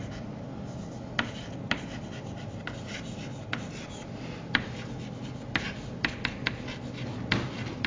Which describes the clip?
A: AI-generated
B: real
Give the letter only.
B